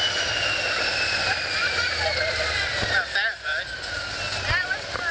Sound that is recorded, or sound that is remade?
recorded